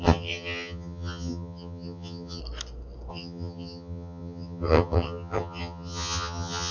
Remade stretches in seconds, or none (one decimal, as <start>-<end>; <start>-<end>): 0.0-2.4; 3.1-6.7